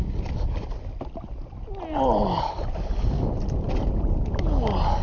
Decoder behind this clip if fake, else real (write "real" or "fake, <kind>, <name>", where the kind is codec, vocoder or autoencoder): real